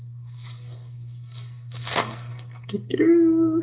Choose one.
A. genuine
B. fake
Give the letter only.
B